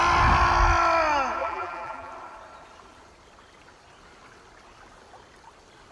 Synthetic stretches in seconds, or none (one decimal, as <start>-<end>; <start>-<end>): 1.4-2.1